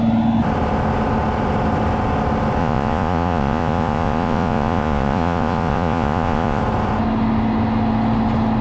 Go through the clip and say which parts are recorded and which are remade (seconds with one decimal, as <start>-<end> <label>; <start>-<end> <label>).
0.0-2.6 recorded; 2.6-6.6 remade; 6.6-8.6 recorded